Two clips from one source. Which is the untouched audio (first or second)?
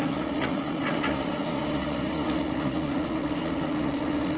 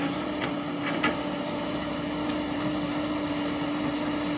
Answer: second